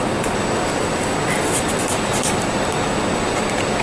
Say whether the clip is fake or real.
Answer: real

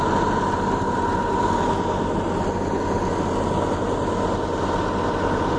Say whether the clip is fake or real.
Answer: real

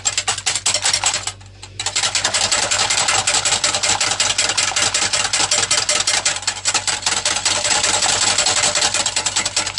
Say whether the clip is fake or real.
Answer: real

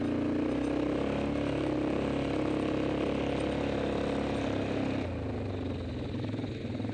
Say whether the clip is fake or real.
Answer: real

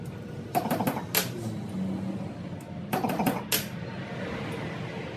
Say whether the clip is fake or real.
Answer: real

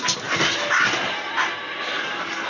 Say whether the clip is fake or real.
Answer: real